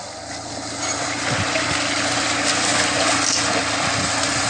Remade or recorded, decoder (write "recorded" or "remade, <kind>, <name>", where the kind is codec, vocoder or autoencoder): recorded